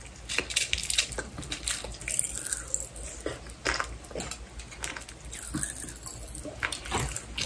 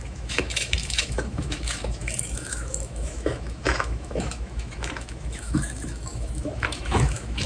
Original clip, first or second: first